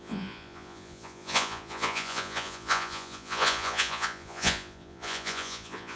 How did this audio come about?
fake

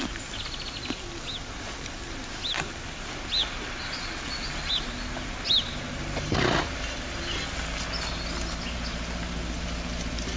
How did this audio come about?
real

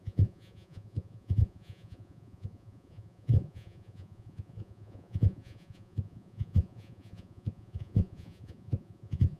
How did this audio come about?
fake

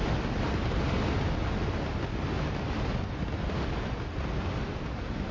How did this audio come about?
real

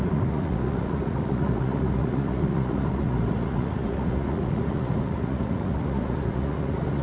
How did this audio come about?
fake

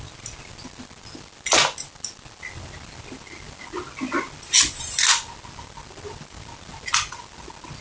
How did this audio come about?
real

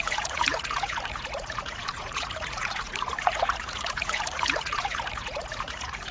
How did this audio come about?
fake